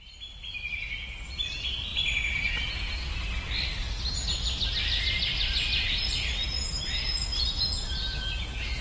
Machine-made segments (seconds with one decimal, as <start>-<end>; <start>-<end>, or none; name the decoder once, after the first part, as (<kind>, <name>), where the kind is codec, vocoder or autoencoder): 6.4-8.8 (vocoder, Vocos)